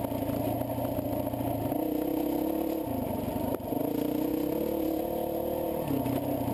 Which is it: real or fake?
real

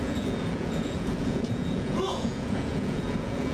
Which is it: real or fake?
fake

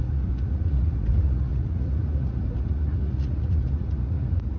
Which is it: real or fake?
fake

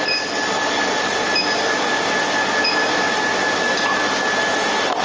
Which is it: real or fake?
real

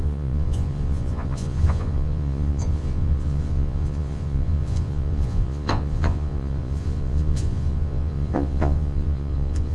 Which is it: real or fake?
fake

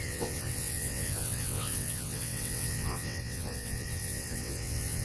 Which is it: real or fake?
fake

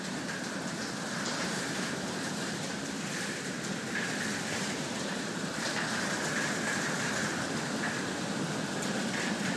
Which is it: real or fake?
fake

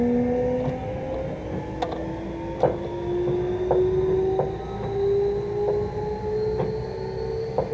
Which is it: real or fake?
real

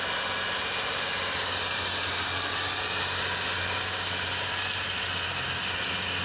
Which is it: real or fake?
real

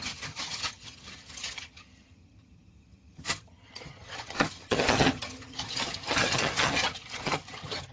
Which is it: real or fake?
fake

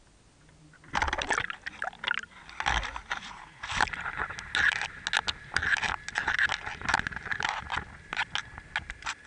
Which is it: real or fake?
real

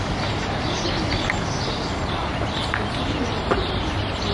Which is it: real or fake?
real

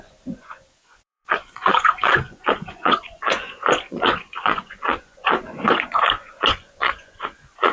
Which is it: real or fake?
fake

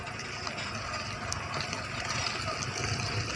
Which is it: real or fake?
real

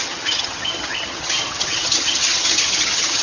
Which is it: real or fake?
fake